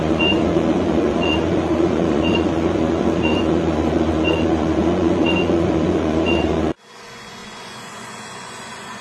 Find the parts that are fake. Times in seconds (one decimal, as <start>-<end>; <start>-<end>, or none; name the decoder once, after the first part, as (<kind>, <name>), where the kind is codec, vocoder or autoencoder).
0.0-9.0 (vocoder, Vocos)